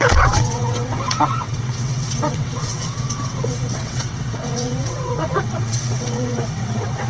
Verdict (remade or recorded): remade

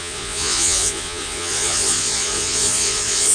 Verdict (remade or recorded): remade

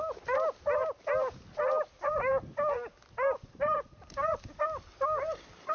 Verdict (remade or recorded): recorded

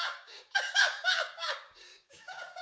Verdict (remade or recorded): remade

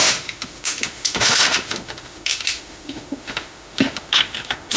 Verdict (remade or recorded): remade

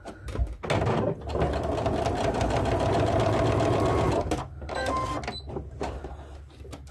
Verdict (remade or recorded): recorded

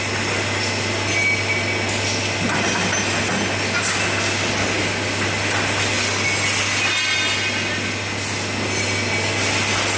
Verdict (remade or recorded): recorded